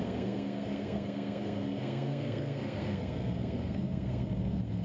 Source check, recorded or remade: remade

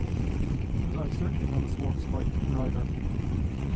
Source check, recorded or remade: remade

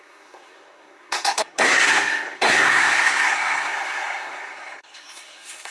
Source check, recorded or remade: remade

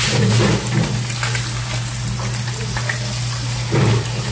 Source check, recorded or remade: recorded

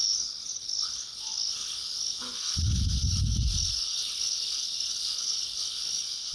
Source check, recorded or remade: remade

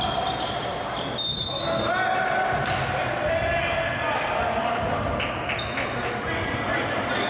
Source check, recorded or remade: recorded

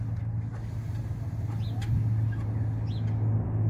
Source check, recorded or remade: recorded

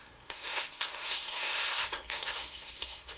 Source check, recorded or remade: remade